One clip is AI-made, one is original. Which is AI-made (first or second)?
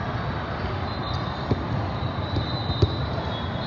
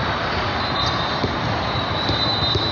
second